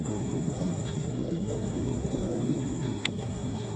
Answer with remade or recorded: remade